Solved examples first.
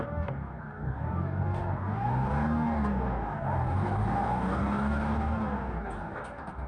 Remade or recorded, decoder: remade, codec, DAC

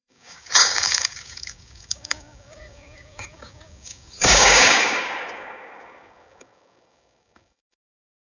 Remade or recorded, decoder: remade, codec, DAC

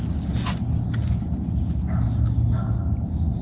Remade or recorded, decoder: recorded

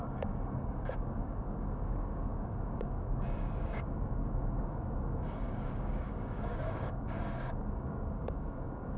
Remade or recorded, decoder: remade, codec, DAC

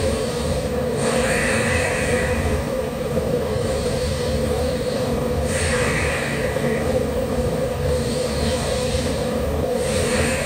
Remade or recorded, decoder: remade, codec, DAC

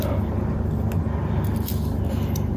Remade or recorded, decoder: recorded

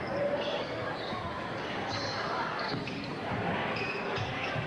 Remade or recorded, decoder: remade, codec, DAC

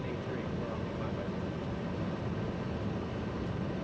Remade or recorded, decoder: recorded